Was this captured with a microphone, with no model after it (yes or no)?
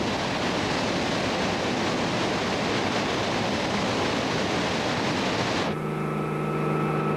yes